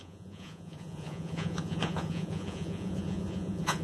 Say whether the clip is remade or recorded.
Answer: remade